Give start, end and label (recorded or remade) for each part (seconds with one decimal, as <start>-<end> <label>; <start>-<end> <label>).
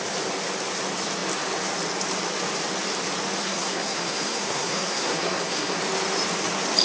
0.0-3.4 recorded; 3.4-5.8 remade; 5.8-6.8 recorded